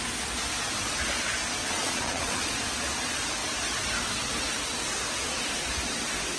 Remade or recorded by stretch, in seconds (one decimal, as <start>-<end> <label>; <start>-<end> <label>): 0.0-1.6 recorded; 1.6-2.5 remade; 2.5-6.4 recorded